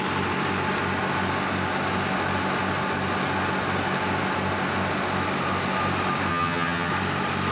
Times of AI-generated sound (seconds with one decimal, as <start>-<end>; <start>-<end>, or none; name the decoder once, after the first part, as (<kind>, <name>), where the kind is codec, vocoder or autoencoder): 6.3-6.9 (vocoder, HiFi-GAN)

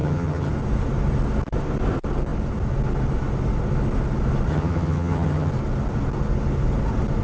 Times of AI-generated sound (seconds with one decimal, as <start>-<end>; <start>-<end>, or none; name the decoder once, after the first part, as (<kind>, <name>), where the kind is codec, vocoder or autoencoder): 0.0-0.5 (vocoder, HiFi-GAN); 4.5-5.5

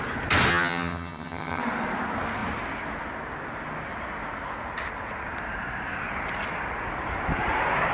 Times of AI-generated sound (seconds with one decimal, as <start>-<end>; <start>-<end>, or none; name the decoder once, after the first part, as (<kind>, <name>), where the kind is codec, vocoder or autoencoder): 0.5-1.6 (vocoder, HiFi-GAN)

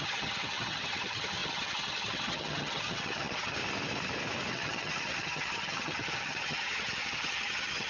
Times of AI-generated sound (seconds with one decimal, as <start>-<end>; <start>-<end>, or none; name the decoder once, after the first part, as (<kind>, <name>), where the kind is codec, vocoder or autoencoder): 0.0-3.6 (vocoder, HiFi-GAN); 4.5-7.9

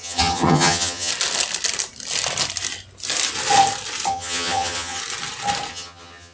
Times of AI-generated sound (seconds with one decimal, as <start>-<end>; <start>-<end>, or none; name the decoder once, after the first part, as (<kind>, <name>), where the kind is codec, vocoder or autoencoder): 0.0-1.1 (vocoder, HiFi-GAN); 4.1-5.0; 5.7-6.3

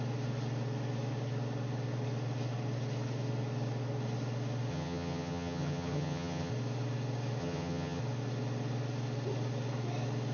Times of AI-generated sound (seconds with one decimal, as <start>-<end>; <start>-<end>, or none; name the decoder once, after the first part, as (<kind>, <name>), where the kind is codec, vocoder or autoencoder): 4.7-6.5 (vocoder, HiFi-GAN); 7.4-8.0

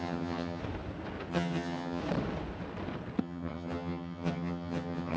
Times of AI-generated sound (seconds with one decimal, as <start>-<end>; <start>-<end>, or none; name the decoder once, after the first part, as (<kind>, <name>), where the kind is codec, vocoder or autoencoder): 0.0-0.6 (vocoder, HiFi-GAN); 1.3-2.0; 3.2-5.2